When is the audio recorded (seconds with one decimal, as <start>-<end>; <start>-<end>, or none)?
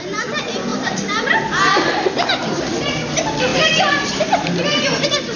0.0-0.7; 2.8-3.5; 4.5-5.4